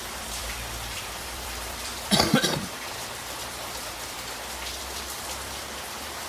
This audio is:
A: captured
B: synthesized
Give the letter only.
B